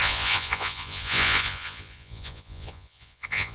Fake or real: fake